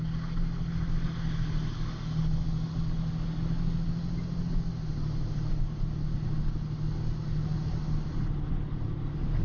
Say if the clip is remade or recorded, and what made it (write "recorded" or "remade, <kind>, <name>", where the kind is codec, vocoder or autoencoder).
recorded